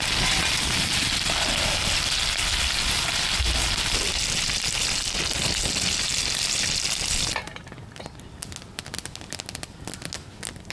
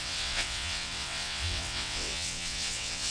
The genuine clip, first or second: first